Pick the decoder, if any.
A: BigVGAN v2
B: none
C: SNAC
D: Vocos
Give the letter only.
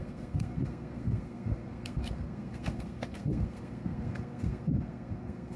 C